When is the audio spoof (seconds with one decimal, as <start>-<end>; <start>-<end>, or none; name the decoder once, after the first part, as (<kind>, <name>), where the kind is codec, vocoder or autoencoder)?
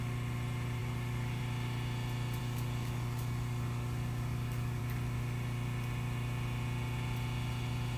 0.8-1.4 (codec, DAC); 2.4-4.8